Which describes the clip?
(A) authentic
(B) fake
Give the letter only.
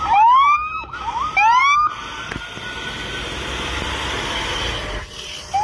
A